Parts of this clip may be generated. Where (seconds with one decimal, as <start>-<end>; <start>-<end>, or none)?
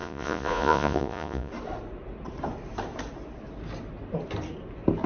0.0-1.5